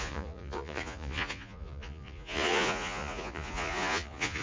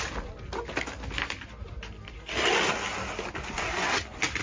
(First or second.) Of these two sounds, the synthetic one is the first